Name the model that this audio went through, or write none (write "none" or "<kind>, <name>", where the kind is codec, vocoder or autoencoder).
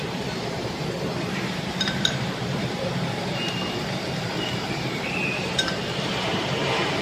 vocoder, BigVGAN v2